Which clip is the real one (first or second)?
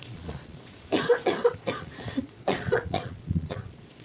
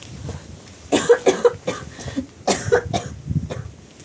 second